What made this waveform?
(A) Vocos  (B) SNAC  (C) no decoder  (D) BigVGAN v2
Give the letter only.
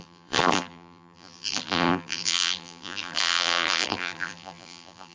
D